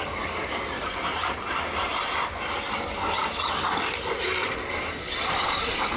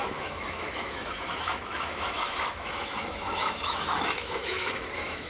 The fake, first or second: second